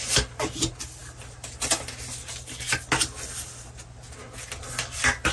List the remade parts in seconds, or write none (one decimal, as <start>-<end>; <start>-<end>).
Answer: none